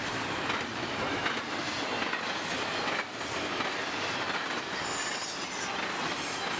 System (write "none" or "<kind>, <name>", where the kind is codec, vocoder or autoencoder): none